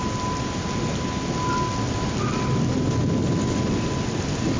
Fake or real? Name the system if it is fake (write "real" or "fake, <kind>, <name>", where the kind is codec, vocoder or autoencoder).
real